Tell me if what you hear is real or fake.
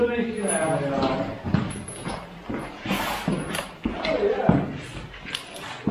real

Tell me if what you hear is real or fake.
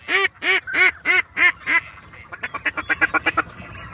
real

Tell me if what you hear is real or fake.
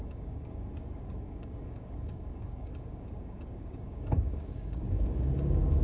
fake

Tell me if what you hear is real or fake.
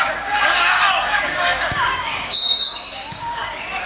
fake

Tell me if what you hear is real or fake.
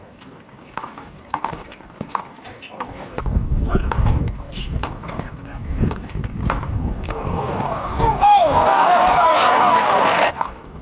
fake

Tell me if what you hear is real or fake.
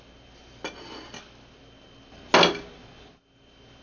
real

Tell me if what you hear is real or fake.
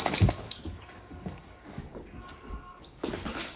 fake